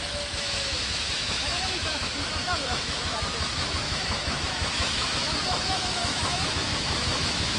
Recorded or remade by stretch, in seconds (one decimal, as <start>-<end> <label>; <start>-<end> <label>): 0.0-7.6 remade